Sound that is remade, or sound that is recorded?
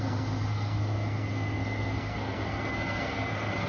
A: remade